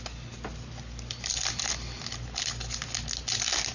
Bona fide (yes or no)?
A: yes